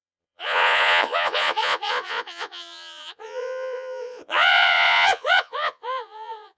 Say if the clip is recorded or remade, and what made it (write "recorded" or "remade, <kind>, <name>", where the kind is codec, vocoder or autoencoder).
remade, vocoder, Vocos